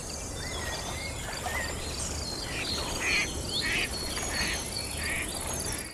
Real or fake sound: real